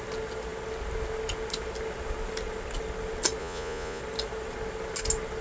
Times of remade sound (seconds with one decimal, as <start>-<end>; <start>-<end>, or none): 3.4-4.0